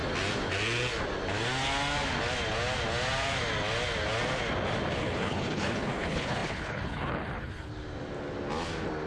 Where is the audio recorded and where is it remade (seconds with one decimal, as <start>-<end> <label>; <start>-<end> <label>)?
0.0-5.0 recorded; 5.0-7.7 remade; 7.7-9.1 recorded